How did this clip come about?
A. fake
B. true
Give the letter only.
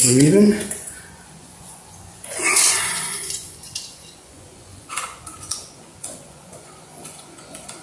A